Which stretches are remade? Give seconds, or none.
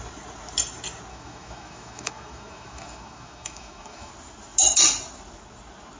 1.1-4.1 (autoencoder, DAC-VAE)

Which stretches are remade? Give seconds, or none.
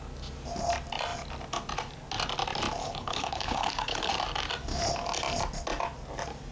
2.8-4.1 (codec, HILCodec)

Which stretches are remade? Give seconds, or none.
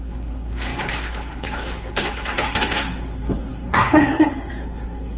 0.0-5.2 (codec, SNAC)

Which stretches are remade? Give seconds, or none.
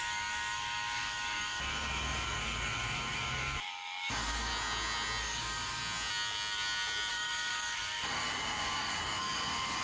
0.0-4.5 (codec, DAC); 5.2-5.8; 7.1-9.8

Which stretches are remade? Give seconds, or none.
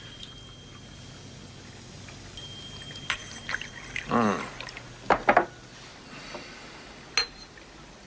none